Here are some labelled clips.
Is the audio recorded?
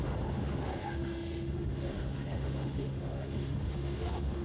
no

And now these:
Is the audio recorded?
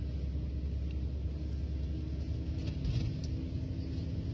yes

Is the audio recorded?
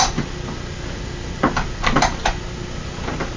yes